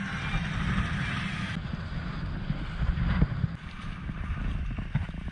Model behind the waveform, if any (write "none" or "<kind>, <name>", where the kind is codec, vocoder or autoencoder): none